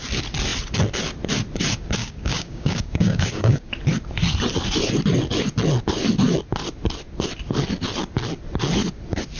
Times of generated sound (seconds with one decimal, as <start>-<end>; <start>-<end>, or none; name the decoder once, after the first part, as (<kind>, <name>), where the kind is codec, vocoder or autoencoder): 2.0-3.7 (codec, DAC)